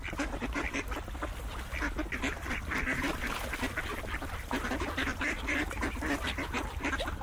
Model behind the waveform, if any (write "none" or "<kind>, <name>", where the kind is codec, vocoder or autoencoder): none